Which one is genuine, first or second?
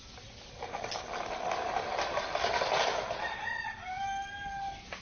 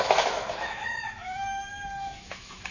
first